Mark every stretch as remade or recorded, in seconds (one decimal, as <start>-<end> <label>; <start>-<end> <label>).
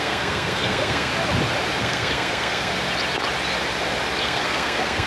0.0-1.1 remade; 1.1-1.8 recorded; 1.8-2.7 remade; 2.7-4.2 recorded; 4.2-5.1 remade